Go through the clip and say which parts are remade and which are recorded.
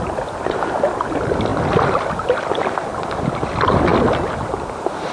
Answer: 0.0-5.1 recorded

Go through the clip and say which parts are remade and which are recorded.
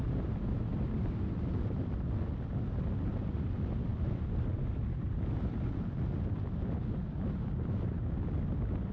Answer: 0.0-8.9 recorded